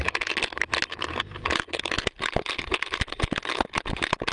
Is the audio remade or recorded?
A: recorded